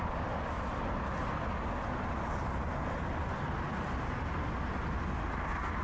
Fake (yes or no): no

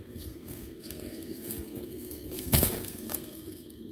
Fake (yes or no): yes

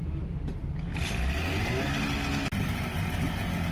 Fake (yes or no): no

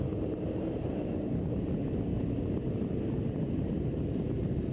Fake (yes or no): yes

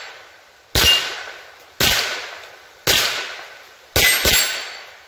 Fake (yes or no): no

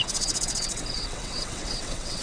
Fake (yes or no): yes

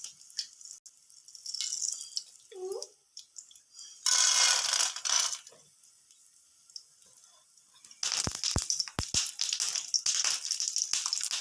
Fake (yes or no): no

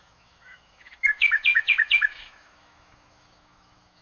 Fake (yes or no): yes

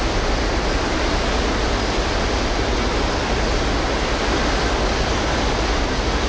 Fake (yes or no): no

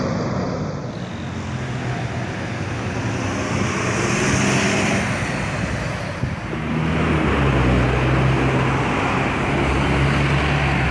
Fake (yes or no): no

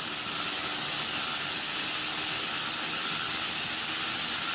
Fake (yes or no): no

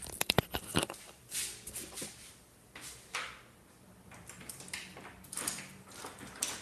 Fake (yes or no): no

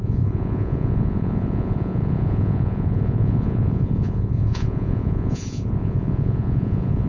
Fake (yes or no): yes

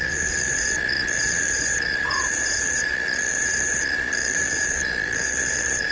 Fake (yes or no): yes